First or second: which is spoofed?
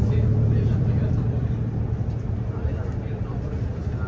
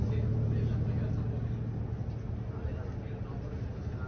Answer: first